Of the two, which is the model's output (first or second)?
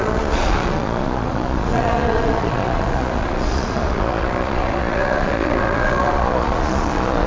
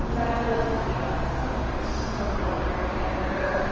first